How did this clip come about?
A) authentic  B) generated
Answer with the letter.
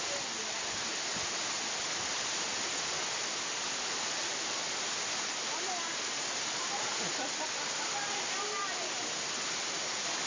A